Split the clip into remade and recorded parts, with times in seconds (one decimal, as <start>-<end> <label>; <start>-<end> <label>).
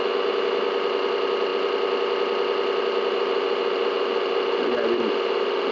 0.0-5.7 recorded